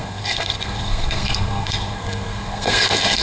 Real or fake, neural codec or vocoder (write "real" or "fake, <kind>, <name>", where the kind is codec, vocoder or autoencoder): fake, codec, SNAC